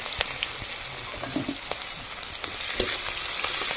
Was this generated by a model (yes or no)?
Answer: no